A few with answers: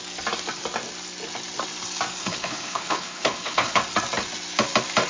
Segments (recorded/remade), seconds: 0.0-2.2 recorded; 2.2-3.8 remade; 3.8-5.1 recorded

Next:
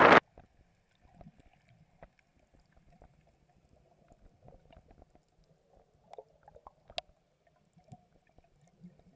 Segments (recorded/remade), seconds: 0.0-9.2 recorded

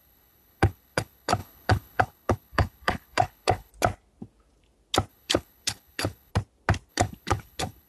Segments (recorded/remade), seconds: 0.0-3.7 remade; 3.7-5.1 recorded; 5.1-6.3 remade; 6.3-6.9 recorded; 6.9-7.9 remade